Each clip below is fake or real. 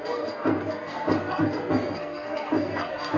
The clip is fake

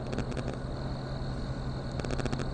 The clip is real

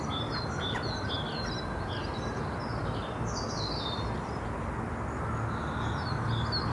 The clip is real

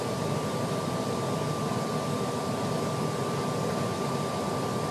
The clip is real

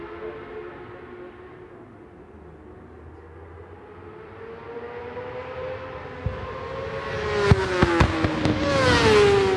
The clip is real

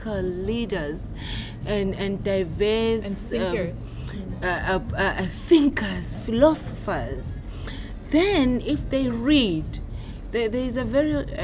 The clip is real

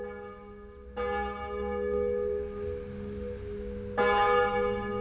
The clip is real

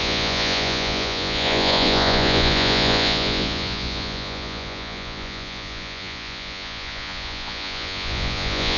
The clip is fake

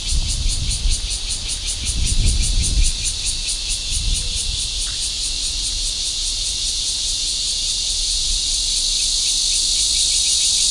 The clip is real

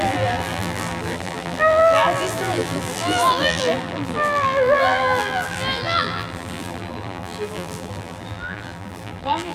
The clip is fake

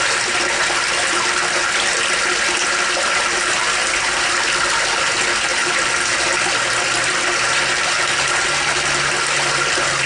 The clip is real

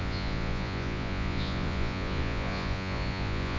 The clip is fake